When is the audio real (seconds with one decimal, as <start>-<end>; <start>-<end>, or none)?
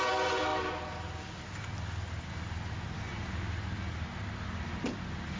0.0-5.4